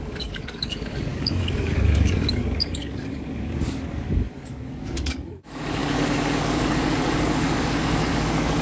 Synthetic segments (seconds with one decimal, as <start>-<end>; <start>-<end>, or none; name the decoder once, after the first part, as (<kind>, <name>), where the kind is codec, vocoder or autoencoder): 0.0-8.6 (codec, DAC)